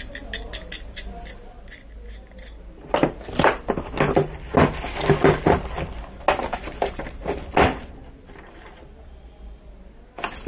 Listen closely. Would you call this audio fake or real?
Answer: real